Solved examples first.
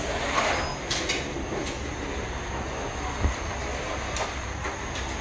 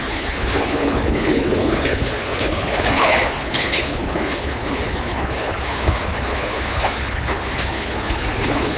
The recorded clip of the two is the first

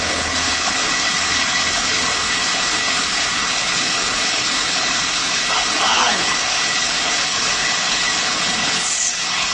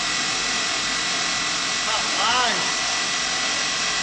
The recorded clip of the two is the second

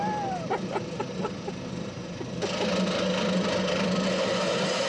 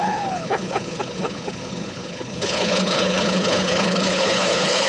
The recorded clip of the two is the first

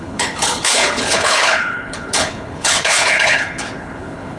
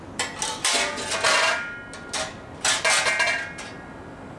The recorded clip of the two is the second